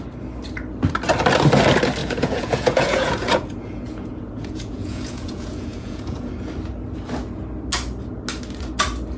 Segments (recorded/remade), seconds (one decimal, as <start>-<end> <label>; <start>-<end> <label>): 0.0-2.0 recorded; 2.0-6.3 remade; 6.3-9.2 recorded